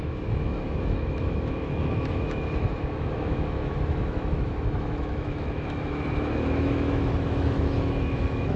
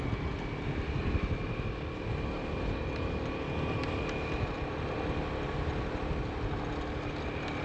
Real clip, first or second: second